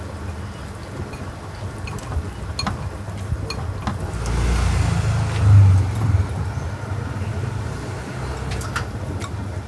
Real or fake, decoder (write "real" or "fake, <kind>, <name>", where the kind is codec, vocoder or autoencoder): real